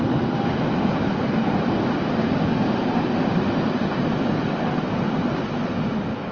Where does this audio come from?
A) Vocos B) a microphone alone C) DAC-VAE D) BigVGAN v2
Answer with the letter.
B